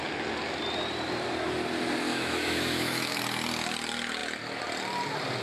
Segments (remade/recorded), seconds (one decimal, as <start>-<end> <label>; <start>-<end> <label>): 0.0-2.1 recorded; 2.1-3.2 remade; 3.2-5.4 recorded